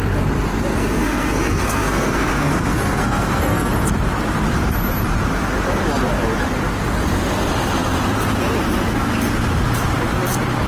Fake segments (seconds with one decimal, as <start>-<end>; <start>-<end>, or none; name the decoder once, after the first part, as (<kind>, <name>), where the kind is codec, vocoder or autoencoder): 0.7-3.7 (codec, SNAC)